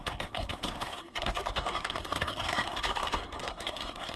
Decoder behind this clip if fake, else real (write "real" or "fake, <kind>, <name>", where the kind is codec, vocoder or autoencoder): fake, codec, SNAC